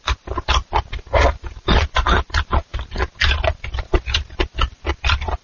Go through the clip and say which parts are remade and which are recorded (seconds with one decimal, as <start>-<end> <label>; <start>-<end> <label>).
0.0-5.4 recorded